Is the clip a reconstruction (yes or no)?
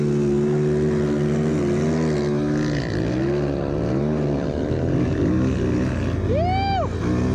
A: no